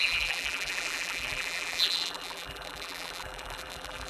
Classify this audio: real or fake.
fake